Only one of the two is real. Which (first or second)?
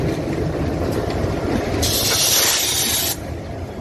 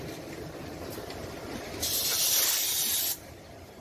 first